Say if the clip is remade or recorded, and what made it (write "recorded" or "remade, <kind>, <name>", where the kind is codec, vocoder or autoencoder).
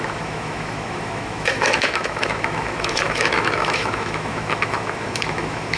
remade, autoencoder, DAC-VAE